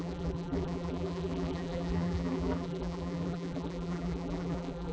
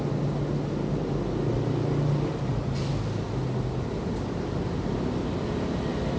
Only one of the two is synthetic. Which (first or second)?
first